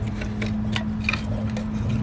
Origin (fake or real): real